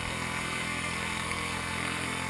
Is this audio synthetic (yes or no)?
yes